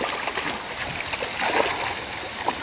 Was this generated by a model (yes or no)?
no